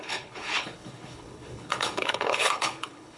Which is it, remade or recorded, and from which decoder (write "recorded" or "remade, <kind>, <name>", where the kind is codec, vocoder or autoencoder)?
remade, codec, HILCodec